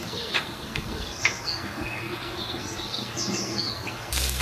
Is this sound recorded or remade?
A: remade